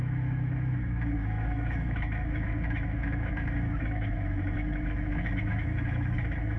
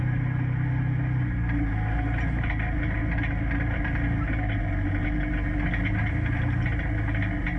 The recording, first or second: second